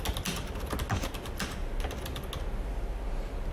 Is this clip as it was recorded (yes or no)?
yes